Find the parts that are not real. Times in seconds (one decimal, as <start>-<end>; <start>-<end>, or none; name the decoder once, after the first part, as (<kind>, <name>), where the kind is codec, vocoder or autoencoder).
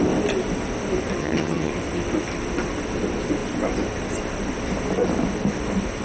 1.2-1.7 (vocoder, HiFi-GAN)